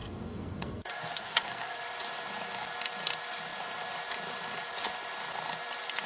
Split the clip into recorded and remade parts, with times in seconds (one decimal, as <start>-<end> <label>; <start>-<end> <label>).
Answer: 0.0-1.8 remade; 1.8-6.1 recorded